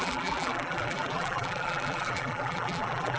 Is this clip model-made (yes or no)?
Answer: yes